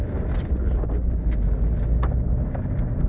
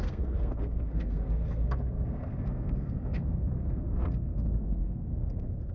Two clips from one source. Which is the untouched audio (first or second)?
first